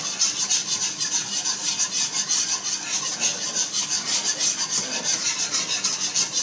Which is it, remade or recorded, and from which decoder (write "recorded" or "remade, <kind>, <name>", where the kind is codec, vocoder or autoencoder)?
recorded